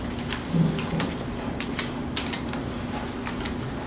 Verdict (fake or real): real